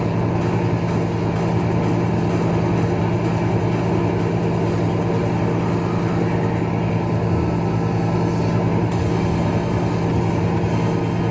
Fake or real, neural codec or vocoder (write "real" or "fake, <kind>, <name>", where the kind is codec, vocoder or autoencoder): real